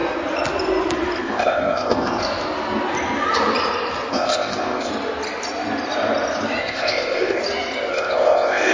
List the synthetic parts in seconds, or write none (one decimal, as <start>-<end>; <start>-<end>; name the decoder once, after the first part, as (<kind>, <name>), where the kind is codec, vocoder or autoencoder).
1.2-2.2 (codec, ZipCodec); 4.1-4.9; 6.6-7.4; 7.9-8.7